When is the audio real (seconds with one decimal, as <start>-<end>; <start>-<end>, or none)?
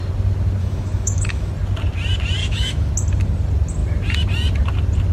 0.0-0.6; 1.5-2.4; 2.9-5.1